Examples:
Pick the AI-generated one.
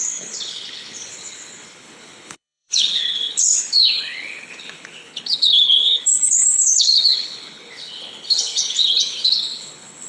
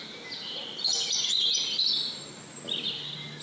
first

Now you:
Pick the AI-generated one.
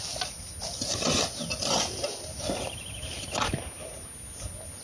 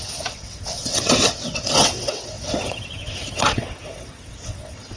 second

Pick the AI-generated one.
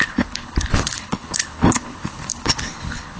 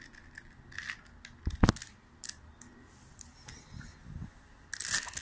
first